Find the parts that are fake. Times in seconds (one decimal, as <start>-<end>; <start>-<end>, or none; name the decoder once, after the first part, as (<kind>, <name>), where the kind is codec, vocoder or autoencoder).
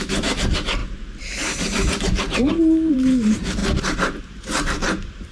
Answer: 0.0-5.3 (vocoder, BigVGAN v2)